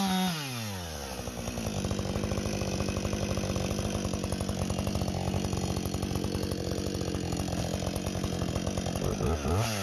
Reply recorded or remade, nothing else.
recorded